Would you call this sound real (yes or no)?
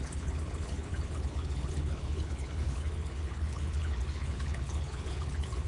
no